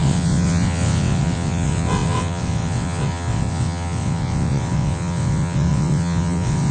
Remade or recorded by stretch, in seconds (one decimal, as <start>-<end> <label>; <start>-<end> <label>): 0.0-6.7 remade